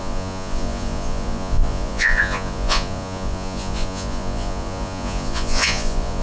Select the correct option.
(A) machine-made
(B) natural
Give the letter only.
A